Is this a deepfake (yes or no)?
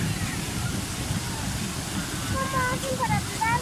no